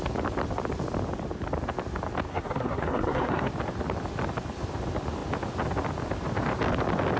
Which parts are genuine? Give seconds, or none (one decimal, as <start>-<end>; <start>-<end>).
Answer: 0.0-2.3; 3.5-7.2